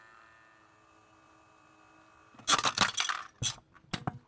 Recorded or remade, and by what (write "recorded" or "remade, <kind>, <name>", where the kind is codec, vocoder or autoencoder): recorded